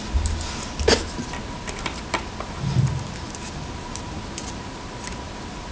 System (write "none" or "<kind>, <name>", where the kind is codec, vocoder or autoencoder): none